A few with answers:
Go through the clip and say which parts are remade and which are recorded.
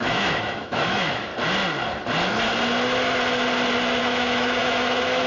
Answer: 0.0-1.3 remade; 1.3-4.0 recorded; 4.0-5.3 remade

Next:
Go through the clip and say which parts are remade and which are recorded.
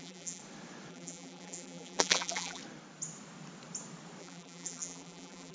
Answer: 0.0-0.4 remade; 0.4-0.9 recorded; 0.9-2.6 remade; 2.6-4.2 recorded; 4.2-5.5 remade